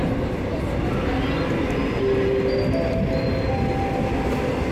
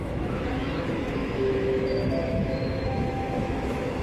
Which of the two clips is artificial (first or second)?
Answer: second